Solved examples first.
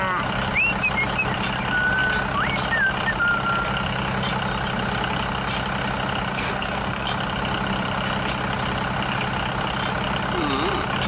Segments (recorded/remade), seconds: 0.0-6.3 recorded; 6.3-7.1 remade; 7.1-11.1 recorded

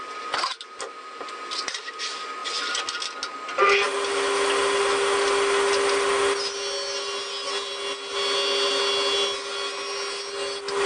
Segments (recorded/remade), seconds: 0.0-10.9 recorded

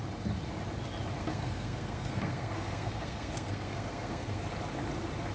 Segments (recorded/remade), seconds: 0.0-1.2 recorded; 1.2-4.4 remade; 4.4-5.3 recorded

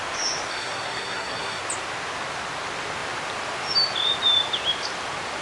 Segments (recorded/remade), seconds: 0.0-0.5 recorded; 0.5-1.6 remade; 1.6-5.4 recorded

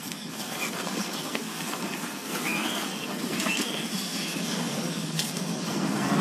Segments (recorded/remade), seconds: 0.0-6.2 remade

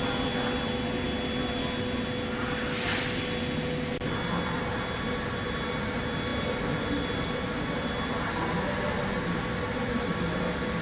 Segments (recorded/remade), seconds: 0.0-10.8 recorded

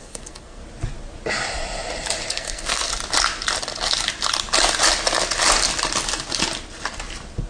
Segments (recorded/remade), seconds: 0.0-0.6 remade; 0.6-2.3 recorded; 2.3-2.9 remade; 2.9-7.5 recorded

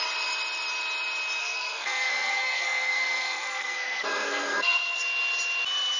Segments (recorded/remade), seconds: 0.0-1.4 recorded; 1.4-5.0 remade; 5.0-6.0 recorded